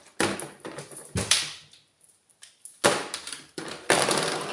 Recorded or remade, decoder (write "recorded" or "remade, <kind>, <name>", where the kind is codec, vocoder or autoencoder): recorded